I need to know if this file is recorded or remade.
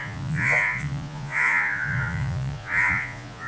remade